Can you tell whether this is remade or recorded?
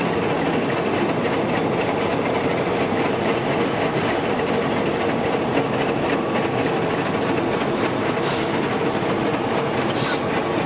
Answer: recorded